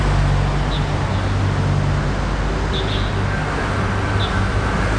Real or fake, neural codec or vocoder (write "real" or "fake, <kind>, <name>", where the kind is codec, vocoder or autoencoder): real